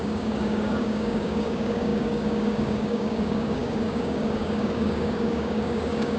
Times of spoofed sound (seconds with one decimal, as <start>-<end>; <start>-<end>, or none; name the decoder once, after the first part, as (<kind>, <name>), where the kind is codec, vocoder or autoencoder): 0.0-6.2 (codec, DAC)